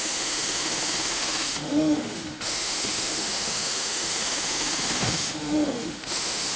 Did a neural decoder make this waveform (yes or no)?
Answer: yes